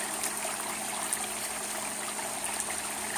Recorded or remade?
recorded